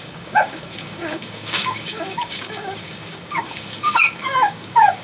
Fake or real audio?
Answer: fake